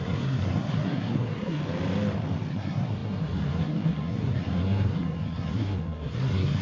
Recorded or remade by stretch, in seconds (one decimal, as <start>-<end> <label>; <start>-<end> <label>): 0.0-1.6 remade; 1.6-2.5 recorded; 2.5-6.6 remade

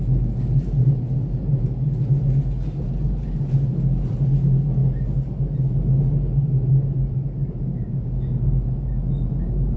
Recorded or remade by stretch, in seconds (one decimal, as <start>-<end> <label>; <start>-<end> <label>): 0.0-7.7 recorded; 7.7-8.7 remade; 8.7-9.8 recorded

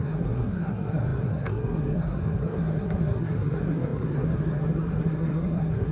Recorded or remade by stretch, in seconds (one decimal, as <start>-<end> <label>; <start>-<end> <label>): 0.0-5.9 remade

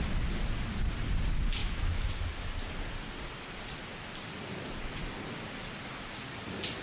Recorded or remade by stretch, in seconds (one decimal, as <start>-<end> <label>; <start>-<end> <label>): 0.0-1.6 recorded; 1.6-2.1 remade; 2.1-6.8 recorded

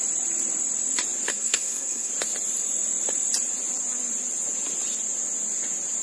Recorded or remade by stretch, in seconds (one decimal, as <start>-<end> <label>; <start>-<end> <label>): 0.0-1.3 recorded; 1.3-2.1 remade; 2.1-6.0 recorded

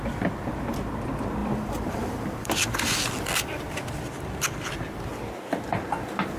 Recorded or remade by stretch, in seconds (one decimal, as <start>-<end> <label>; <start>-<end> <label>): 0.0-1.4 recorded; 1.4-3.3 remade; 3.3-6.4 recorded